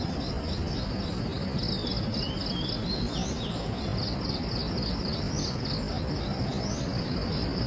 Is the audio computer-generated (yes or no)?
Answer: no